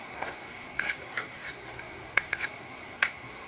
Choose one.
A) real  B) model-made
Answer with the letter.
B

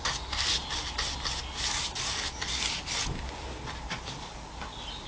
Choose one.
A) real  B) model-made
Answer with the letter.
A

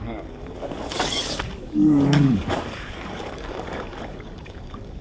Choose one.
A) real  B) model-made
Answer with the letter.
B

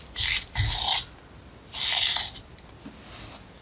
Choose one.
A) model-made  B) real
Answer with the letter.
B